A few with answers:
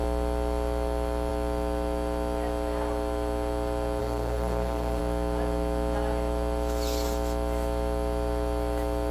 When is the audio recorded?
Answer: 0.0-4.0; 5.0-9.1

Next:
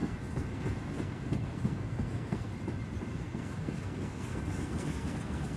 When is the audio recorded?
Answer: 2.5-3.1

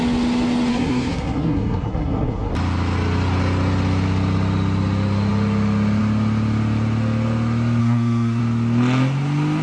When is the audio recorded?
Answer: 0.0-0.7; 2.5-7.8; 8.4-9.6

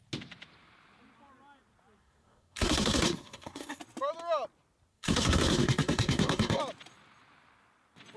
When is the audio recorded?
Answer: 0.0-2.0; 3.8-4.9; 6.6-8.2

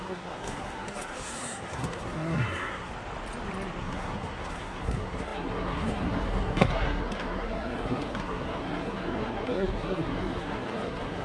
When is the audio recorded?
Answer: 2.9-3.8